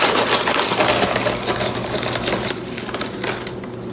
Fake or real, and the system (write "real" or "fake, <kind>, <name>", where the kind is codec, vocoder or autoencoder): real